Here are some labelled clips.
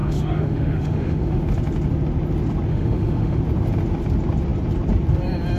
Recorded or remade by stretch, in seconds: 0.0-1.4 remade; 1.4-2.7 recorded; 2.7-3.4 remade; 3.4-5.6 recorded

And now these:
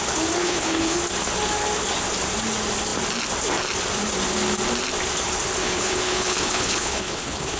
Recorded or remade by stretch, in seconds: 0.0-0.4 recorded; 0.4-1.0 remade; 1.0-5.6 recorded; 5.6-7.6 remade

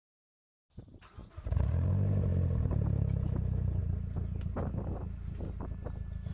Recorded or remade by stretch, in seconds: 0.0-1.2 recorded; 1.2-1.9 remade; 1.9-6.3 recorded

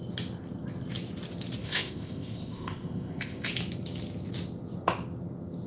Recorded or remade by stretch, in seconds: 0.0-1.6 recorded; 1.6-3.5 remade; 3.5-5.7 recorded

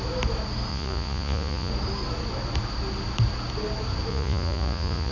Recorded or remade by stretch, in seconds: 0.0-0.7 recorded; 0.7-1.7 remade; 1.7-4.1 recorded; 4.1-5.1 remade

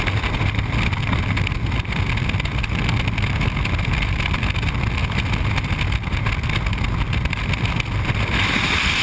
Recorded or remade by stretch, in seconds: 0.0-9.0 recorded

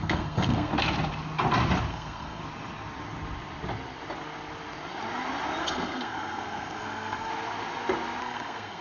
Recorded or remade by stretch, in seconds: 0.0-0.7 remade; 0.7-1.9 recorded; 1.9-2.4 remade; 2.4-5.6 recorded; 5.6-7.3 remade; 7.3-8.2 recorded; 8.2-8.8 remade

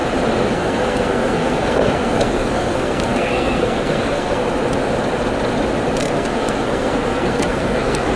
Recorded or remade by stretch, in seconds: 0.0-0.5 recorded; 0.5-4.4 remade; 4.4-6.0 recorded; 6.0-8.2 remade